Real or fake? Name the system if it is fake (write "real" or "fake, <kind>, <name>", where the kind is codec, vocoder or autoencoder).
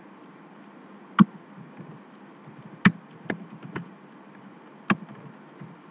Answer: real